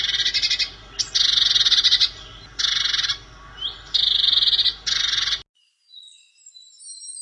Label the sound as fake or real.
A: real